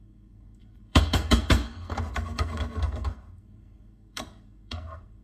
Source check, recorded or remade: remade